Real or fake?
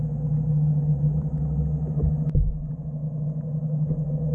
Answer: real